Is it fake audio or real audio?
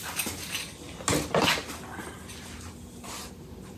real